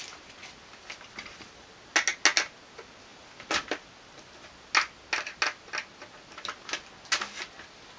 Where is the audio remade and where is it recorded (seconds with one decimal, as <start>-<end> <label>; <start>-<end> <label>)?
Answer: 0.0-3.1 recorded; 3.1-3.9 remade; 3.9-8.0 recorded